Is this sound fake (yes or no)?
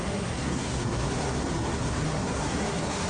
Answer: yes